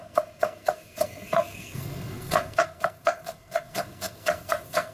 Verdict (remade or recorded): remade